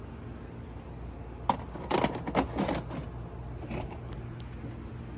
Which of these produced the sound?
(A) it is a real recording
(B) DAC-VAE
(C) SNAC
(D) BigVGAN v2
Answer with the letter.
A